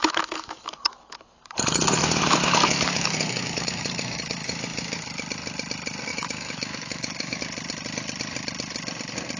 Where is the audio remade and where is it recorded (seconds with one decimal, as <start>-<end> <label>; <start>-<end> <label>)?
0.0-5.0 remade; 5.0-6.1 recorded; 6.1-7.4 remade; 7.4-9.4 recorded